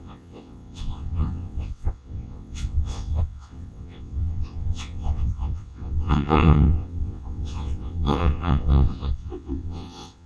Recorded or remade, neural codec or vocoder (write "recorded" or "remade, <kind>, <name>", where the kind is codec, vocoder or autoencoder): remade, vocoder, WaveNeXt